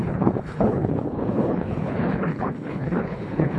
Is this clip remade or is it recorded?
remade